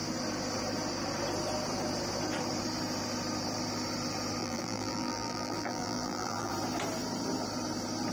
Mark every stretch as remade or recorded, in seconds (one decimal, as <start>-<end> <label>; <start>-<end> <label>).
0.0-4.4 recorded; 4.4-6.5 remade; 6.5-8.1 recorded